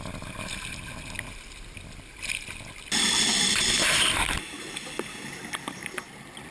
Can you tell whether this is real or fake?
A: real